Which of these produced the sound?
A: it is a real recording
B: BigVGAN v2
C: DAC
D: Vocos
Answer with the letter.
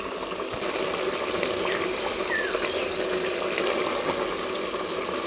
A